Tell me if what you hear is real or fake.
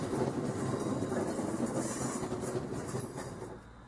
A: real